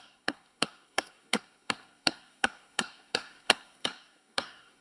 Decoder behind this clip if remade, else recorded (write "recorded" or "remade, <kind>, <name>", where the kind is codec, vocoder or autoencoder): remade, codec, SNAC